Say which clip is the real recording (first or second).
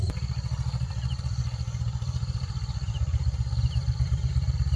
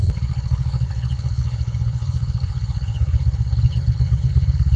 first